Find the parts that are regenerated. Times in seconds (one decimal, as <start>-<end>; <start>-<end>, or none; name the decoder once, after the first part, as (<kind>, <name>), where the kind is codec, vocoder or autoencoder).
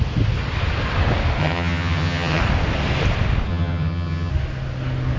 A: 1.4-2.4 (vocoder, HiFi-GAN); 3.5-4.3